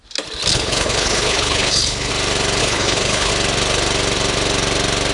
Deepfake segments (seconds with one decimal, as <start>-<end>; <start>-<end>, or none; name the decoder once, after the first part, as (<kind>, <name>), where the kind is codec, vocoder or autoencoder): 0.5-2.1 (codec, HILCodec); 2.6-3.3

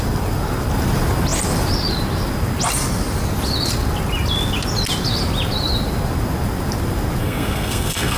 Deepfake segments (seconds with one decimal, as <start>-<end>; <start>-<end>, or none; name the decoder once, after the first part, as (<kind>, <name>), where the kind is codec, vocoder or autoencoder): 7.2-8.2 (codec, SNAC)

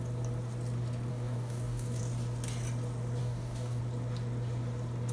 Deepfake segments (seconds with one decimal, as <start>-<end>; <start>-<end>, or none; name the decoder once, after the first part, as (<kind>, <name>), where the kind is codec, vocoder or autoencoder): 1.1-2.0 (codec, DAC); 3.2-3.8

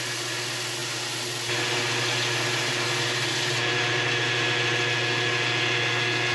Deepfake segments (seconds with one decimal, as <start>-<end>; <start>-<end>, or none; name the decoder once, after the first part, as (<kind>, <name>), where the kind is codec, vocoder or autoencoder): none